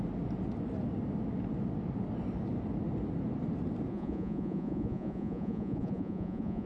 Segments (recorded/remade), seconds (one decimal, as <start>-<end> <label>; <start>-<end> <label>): 0.0-3.9 recorded; 3.9-6.7 remade